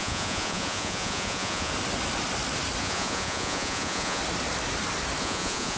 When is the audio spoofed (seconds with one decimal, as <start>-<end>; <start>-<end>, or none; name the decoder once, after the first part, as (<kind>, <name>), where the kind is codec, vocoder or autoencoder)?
0.0-1.7 (vocoder, Vocos); 2.8-4.2; 5.2-5.8